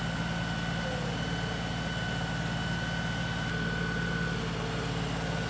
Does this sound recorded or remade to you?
recorded